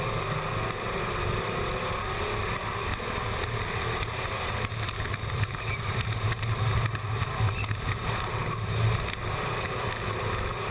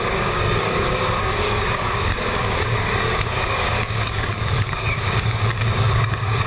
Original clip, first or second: first